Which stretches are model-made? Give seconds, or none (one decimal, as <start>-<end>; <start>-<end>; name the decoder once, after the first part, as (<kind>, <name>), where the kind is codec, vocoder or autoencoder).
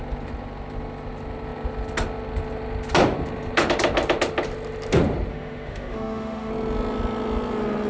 5.3-6.5 (autoencoder, DAC-VAE)